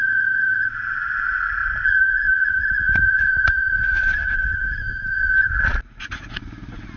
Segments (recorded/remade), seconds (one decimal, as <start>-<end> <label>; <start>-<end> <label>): 0.0-7.0 remade